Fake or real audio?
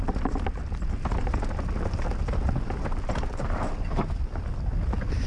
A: real